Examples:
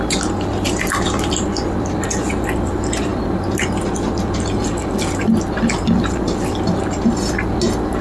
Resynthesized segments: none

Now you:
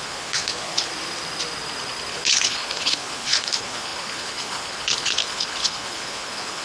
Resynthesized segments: 0.0-0.9 (codec, HILCodec); 2.1-6.6

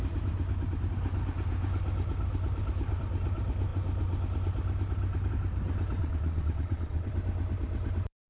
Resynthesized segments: 6.0-7.1 (vocoder, WaveNeXt)

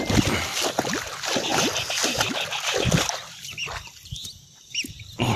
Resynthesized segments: none

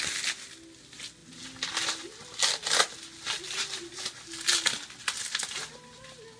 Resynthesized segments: none

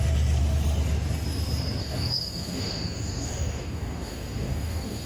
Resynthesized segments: 1.8-5.1 (codec, DAC)